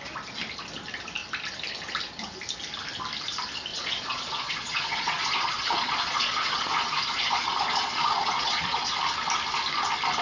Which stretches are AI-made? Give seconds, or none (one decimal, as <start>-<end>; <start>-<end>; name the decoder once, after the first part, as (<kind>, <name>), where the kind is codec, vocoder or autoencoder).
3.7-9.0 (vocoder, Vocos)

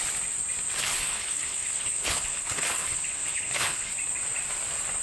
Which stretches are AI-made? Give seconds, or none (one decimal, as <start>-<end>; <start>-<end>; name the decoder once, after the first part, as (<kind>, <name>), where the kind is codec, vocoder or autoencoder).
0.9-3.9 (codec, HILCodec)